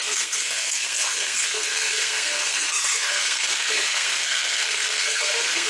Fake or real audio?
fake